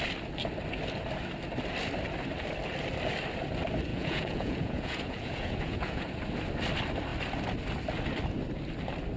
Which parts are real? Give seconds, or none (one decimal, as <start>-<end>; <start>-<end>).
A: 0.0-3.9; 6.1-9.2

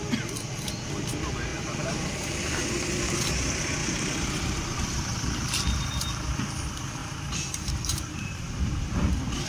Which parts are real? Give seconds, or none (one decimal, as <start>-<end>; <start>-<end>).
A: 0.0-1.5; 2.6-3.8; 5.1-7.0; 9.1-9.5

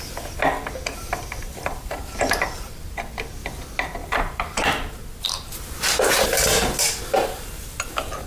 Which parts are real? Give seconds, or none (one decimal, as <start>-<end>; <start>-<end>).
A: 0.0-1.4; 2.9-4.0; 4.9-8.3

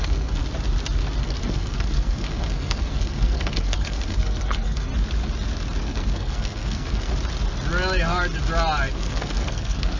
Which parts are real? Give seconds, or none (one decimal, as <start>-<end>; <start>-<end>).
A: 0.4-1.2; 4.9-5.8; 7.1-8.9

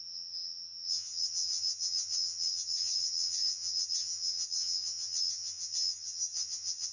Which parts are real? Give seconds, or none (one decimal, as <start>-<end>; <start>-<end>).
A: none

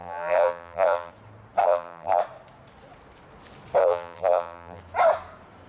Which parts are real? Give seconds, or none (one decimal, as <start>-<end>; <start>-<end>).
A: 1.1-1.6; 2.2-3.8; 4.8-5.7

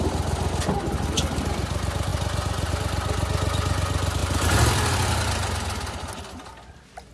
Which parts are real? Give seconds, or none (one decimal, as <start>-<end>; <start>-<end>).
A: 0.0-7.1

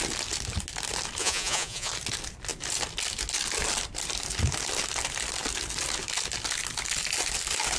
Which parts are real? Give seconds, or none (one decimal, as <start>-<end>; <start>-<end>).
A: 0.0-1.2; 1.9-7.8